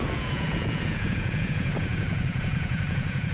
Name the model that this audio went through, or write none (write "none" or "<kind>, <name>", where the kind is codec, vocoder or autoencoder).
vocoder, Vocos